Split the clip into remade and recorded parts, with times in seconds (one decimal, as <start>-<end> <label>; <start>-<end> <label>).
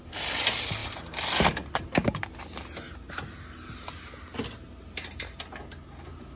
0.0-6.4 recorded